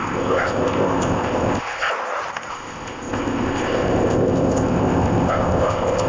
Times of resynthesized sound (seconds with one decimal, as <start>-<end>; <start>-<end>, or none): 0.0-1.9; 2.5-6.1